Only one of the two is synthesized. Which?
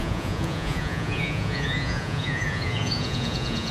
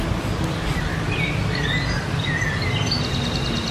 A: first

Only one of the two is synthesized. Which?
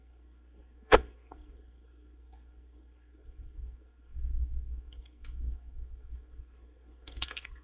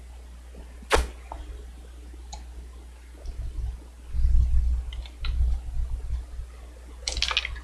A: first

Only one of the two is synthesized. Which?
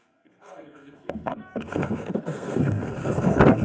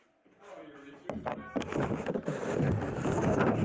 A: first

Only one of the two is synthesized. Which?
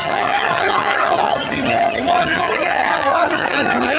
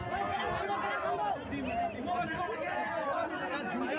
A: first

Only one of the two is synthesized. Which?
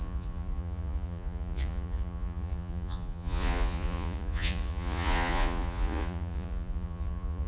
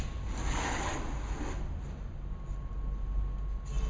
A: first